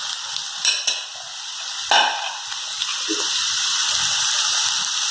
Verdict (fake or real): real